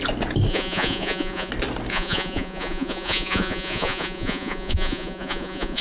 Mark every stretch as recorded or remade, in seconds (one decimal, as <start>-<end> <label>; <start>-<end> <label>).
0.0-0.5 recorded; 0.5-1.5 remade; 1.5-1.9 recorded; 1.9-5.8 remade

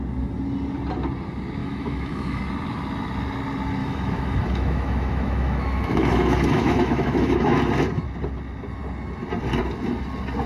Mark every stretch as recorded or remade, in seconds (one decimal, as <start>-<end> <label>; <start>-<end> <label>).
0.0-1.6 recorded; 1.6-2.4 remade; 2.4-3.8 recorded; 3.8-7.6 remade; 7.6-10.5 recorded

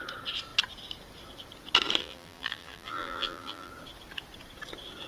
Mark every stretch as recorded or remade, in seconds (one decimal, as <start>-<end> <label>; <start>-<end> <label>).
0.0-2.0 recorded; 2.0-3.7 remade; 3.7-5.1 recorded

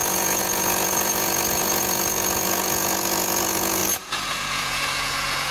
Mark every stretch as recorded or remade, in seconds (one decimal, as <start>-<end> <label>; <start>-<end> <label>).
0.0-5.5 remade